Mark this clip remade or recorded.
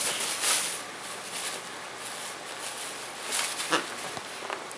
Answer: recorded